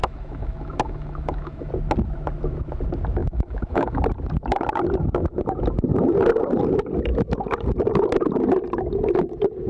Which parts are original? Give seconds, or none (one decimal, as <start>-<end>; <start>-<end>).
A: 1.7-3.2; 4.0-9.7